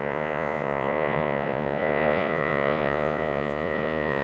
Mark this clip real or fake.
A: fake